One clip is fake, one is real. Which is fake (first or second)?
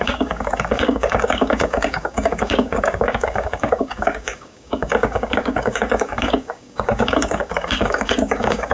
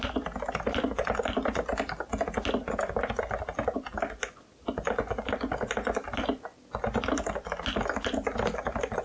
first